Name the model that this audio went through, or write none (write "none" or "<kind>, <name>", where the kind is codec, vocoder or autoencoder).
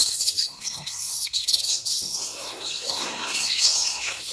codec, SNAC